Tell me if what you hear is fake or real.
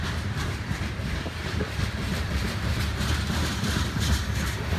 fake